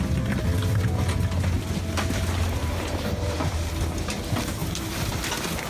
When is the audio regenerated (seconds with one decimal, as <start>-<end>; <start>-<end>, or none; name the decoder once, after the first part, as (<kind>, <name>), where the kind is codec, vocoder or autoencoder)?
2.6-3.5 (vocoder, BigVGAN v2); 4.6-5.1

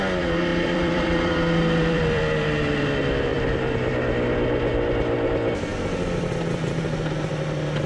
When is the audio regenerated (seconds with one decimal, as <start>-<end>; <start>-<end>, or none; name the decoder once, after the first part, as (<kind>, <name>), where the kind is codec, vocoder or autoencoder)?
0.5-2.2 (vocoder, BigVGAN v2)

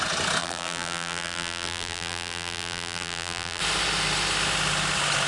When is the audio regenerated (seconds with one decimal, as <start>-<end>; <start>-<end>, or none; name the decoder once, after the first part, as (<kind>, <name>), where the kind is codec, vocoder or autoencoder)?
0.4-3.6 (vocoder, BigVGAN v2)

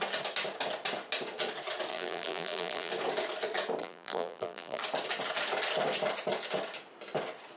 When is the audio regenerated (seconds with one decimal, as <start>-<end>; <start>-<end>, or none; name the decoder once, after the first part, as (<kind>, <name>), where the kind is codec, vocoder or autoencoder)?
1.9-2.9 (vocoder, BigVGAN v2); 3.8-4.8

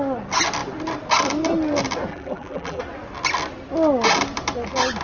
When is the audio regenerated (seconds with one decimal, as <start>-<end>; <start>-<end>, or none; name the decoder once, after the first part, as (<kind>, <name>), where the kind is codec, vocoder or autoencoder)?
2.1-2.8 (vocoder, BigVGAN v2)

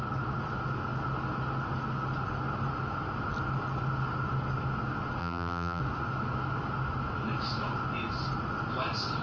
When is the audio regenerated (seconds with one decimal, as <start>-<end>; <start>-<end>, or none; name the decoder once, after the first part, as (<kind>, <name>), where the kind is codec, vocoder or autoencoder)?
5.2-5.8 (vocoder, BigVGAN v2)